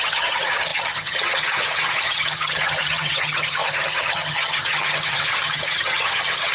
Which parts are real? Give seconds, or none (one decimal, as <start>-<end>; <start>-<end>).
none